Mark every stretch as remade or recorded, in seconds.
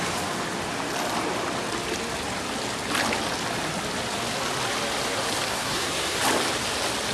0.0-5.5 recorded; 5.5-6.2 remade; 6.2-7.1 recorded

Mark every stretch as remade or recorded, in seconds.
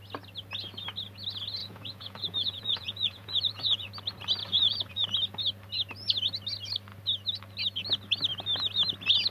0.0-1.6 recorded; 1.6-3.9 remade; 3.9-4.4 recorded; 4.4-5.1 remade; 5.1-9.3 recorded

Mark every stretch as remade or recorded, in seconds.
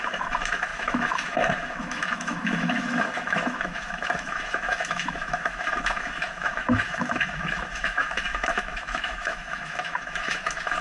0.0-10.8 remade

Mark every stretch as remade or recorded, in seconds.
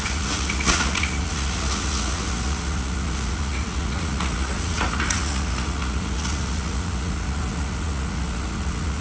0.0-9.0 remade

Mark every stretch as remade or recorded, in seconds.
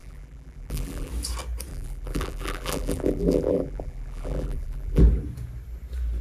0.0-1.1 remade; 1.1-1.7 recorded; 1.7-5.0 remade; 5.0-6.2 recorded